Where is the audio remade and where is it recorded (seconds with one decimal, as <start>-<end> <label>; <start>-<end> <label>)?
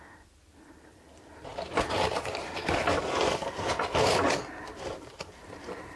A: 0.0-6.0 recorded